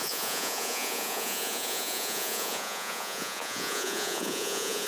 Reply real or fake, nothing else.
fake